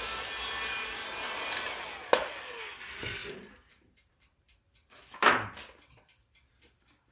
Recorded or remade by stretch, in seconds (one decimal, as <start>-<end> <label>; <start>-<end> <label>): 0.0-7.1 recorded